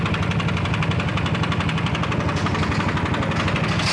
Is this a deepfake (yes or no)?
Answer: no